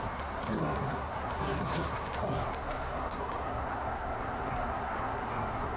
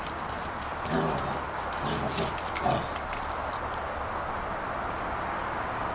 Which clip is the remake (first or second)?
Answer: first